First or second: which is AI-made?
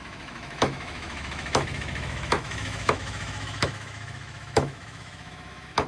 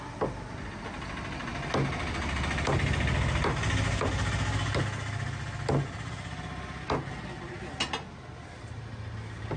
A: first